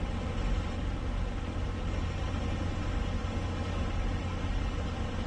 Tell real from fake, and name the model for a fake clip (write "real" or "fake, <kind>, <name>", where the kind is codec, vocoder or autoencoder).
real